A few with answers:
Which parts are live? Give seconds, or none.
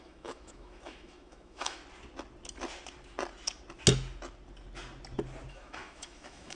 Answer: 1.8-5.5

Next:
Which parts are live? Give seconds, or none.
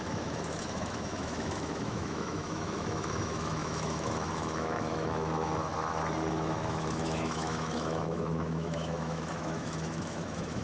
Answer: 5.7-6.3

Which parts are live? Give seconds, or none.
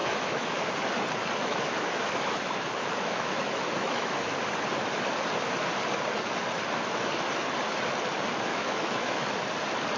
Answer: 0.7-1.4; 4.5-8.5; 9.4-10.0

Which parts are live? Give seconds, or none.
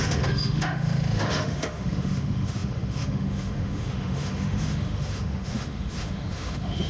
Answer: none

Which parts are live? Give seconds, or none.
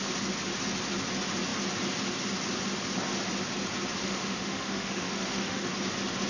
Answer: 0.0-4.0; 5.7-6.3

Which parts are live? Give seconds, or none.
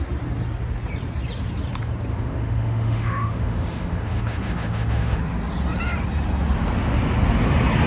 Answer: 0.0-2.1; 5.2-7.9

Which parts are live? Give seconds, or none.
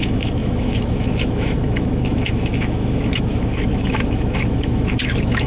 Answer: none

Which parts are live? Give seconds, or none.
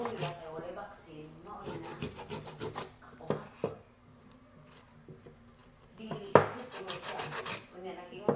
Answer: 0.0-8.4